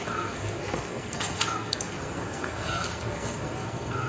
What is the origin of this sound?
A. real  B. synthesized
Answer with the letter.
B